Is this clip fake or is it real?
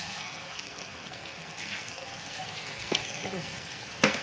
fake